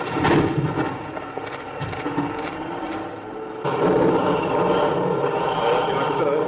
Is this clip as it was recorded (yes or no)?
yes